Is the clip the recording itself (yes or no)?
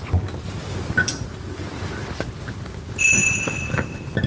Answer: yes